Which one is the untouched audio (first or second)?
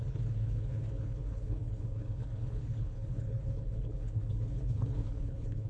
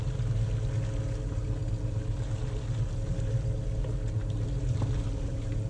second